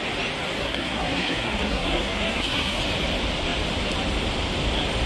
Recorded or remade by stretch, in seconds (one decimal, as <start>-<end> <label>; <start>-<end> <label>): 0.0-0.6 recorded; 0.6-2.8 remade; 2.8-5.1 recorded